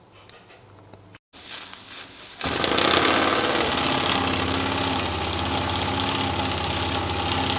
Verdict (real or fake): real